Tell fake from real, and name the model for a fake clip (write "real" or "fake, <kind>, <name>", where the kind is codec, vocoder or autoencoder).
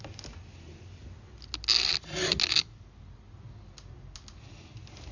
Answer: real